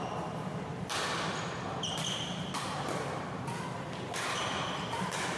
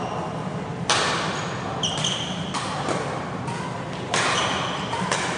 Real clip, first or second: second